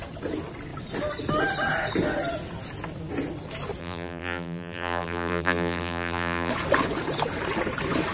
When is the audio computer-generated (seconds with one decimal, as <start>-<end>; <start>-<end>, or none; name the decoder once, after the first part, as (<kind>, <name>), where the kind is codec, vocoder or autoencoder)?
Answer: 3.8-6.5 (vocoder, BigVGAN v2)